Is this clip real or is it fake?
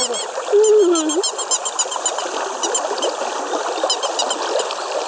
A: real